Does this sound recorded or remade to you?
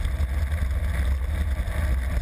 recorded